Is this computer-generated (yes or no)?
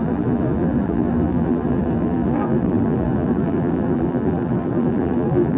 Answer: yes